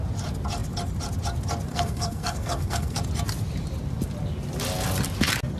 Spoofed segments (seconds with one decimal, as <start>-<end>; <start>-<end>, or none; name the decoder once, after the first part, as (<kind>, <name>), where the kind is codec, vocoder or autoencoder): 1.7-3.0 (codec, SNAC)